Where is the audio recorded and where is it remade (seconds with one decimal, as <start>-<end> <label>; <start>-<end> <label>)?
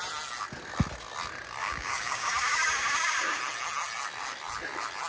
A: 0.0-1.6 recorded; 1.6-3.4 remade; 3.4-5.1 recorded